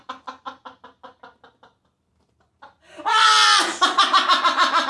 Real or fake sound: real